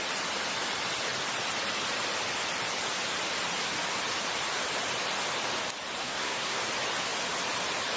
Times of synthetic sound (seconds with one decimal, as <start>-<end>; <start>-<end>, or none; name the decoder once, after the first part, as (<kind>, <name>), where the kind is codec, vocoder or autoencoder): 6.0-6.6 (codec, SNAC)